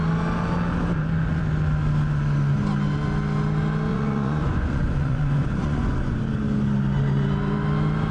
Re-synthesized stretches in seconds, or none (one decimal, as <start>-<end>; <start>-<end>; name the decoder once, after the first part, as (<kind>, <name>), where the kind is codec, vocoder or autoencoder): 3.9-6.2 (vocoder, Vocos)